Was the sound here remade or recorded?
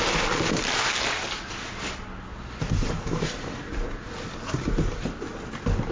recorded